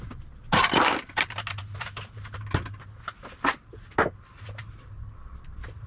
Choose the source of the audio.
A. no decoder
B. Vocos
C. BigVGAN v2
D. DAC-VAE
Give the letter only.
A